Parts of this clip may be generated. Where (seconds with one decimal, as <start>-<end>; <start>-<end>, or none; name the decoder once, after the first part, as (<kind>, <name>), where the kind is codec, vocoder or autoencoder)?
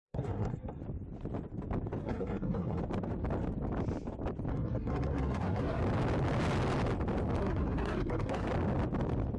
0.0-0.8 (codec, SNAC); 2.0-2.8; 4.5-5.8; 7.4-8.5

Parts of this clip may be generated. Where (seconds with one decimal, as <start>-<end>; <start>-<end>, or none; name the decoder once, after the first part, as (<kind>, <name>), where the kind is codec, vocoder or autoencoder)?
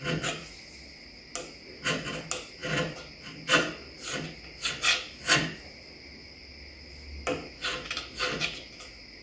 none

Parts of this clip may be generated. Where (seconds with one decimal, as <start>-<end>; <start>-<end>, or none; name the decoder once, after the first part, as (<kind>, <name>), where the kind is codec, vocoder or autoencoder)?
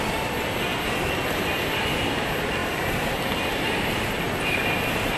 none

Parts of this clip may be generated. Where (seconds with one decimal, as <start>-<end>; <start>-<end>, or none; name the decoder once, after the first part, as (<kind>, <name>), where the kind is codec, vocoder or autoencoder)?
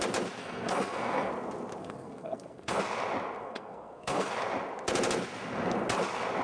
0.4-1.3 (codec, SNAC); 1.8-2.8; 3.4-4.3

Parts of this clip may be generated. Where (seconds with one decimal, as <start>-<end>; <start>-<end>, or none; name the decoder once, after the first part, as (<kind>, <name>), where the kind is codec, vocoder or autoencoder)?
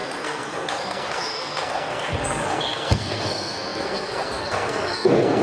0.0-5.4 (codec, SNAC)